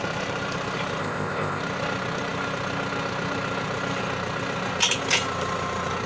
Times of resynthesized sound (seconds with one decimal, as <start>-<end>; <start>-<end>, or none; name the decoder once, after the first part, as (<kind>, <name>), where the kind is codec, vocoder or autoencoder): 1.0-1.6 (codec, ZipCodec)

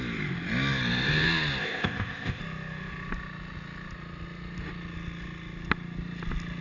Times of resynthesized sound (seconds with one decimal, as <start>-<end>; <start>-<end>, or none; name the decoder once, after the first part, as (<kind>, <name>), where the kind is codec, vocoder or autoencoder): 1.6-2.4 (codec, ZipCodec)

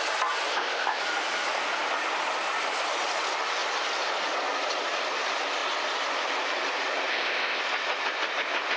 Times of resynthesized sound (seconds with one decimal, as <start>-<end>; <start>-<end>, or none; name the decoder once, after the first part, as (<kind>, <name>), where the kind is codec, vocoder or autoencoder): 0.5-1.0 (codec, ZipCodec); 7.1-7.6

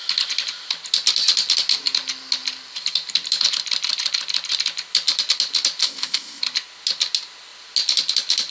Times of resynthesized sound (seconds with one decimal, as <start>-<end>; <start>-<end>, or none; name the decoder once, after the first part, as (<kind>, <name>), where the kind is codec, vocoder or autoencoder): 5.8-6.4 (codec, ZipCodec)

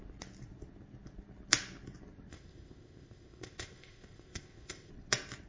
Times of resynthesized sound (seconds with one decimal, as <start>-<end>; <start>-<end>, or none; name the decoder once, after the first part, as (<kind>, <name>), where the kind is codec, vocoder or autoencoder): 2.3-4.9 (codec, ZipCodec)